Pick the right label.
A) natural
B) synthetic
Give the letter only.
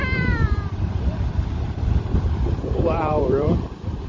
B